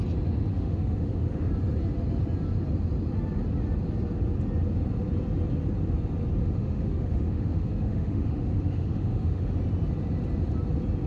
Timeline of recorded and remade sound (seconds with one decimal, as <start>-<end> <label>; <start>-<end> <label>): 0.0-0.5 recorded; 0.5-1.5 remade; 1.5-6.4 recorded; 6.4-9.4 remade; 9.4-11.1 recorded